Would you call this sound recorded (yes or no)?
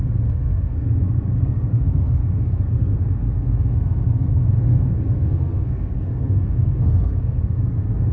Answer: no